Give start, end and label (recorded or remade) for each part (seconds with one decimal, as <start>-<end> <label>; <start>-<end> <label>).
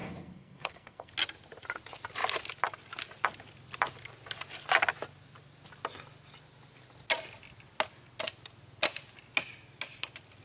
0.0-1.1 remade; 1.1-10.4 recorded